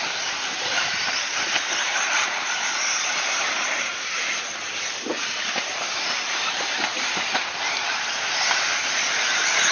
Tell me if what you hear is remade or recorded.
remade